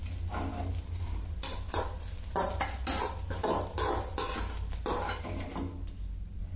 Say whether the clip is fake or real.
real